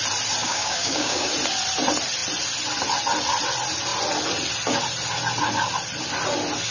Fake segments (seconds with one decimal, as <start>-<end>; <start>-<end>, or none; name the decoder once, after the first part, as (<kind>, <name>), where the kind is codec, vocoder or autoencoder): 0.4-1.3 (codec, DAC)